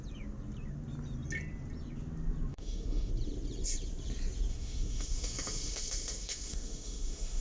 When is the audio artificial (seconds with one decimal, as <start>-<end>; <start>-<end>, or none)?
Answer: 2.5-3.1; 4.5-7.4